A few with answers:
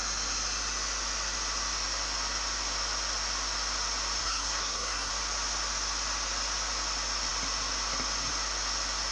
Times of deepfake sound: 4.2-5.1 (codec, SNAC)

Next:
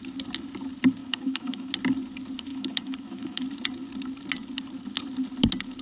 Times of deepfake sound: 1.0-1.7 (autoencoder, DAC-VAE); 2.5-3.4

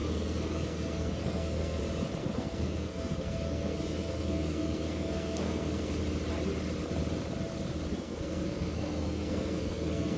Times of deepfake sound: 0.0-1.8 (codec, SNAC); 2.2-6.0; 7.9-10.2